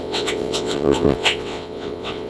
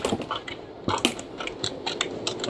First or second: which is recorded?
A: second